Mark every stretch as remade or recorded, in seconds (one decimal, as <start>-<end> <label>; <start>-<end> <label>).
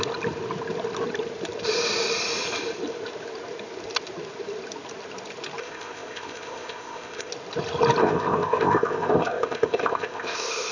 0.0-5.6 recorded; 5.6-7.3 remade; 7.3-8.0 recorded; 8.0-10.7 remade